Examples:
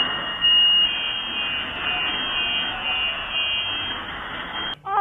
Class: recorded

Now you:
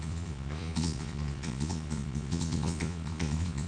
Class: remade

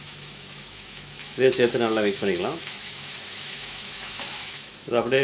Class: remade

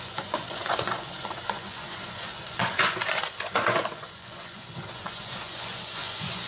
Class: remade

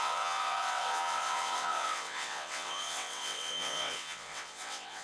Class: remade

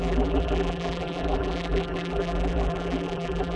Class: remade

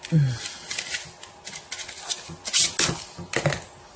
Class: recorded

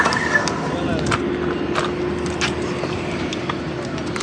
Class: recorded